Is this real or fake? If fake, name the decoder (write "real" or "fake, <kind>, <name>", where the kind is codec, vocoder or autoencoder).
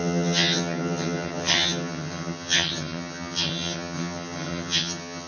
fake, vocoder, HiFi-GAN